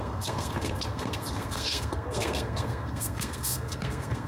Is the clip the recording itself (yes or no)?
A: no